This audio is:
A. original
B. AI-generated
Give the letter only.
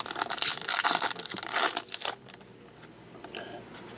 A